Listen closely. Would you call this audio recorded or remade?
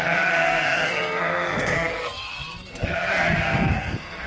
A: remade